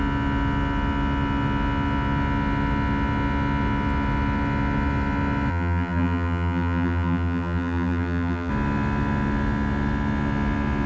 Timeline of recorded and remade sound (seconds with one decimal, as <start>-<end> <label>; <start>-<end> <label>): 0.0-5.5 recorded; 5.5-8.5 remade; 8.5-10.9 recorded

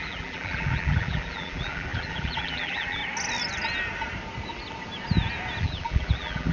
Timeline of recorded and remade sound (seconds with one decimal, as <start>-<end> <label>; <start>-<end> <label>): 0.0-3.0 remade; 3.0-5.6 recorded; 5.6-6.5 remade

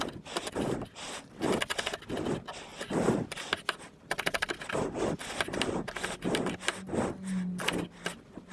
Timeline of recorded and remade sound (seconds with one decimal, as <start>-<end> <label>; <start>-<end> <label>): 0.0-8.5 recorded

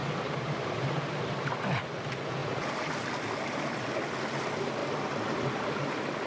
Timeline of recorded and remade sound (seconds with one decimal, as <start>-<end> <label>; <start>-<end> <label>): 0.0-1.5 remade; 1.5-6.3 recorded

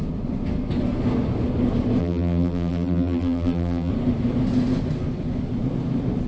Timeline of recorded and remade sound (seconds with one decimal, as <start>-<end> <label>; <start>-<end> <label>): 0.0-2.0 recorded; 2.0-3.9 remade; 3.9-6.3 recorded